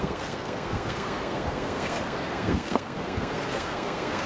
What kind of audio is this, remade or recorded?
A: remade